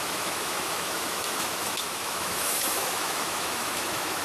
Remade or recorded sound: remade